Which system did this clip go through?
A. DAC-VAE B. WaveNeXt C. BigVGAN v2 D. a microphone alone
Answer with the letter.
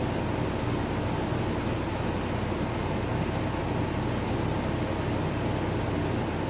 D